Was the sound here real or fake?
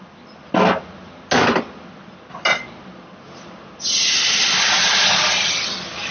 real